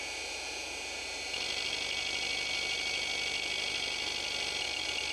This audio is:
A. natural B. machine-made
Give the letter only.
A